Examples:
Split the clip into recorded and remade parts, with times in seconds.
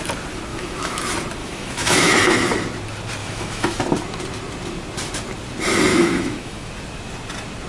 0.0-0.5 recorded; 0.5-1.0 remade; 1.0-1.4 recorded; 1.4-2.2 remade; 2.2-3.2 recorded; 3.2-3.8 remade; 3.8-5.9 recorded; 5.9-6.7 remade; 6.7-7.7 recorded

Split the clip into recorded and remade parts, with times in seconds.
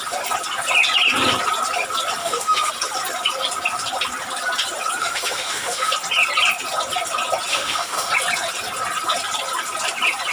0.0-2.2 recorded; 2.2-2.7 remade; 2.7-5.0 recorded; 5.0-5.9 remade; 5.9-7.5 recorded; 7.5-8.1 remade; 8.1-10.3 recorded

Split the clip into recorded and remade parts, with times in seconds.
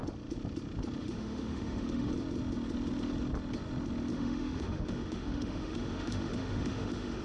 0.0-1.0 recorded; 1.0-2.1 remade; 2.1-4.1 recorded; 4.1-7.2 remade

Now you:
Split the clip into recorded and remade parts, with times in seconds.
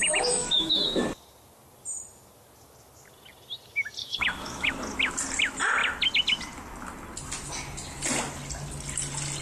0.0-1.0 remade; 1.0-4.0 recorded; 4.0-4.7 remade; 4.7-9.4 recorded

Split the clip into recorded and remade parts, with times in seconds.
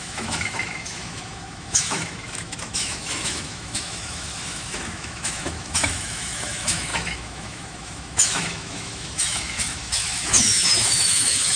0.0-11.6 remade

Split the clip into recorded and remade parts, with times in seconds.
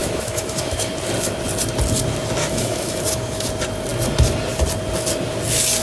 0.0-0.9 remade; 0.9-2.4 recorded; 2.4-3.5 remade; 3.5-5.8 recorded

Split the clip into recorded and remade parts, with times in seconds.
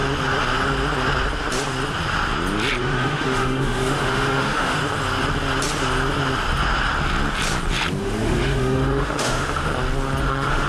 0.0-2.8 recorded; 2.8-4.8 remade; 4.8-8.0 recorded; 8.0-9.7 remade; 9.7-10.2 recorded; 10.2-10.7 remade